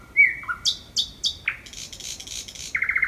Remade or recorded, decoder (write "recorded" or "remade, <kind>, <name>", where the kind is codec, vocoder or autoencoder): recorded